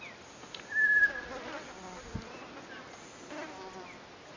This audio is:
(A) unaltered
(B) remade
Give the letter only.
A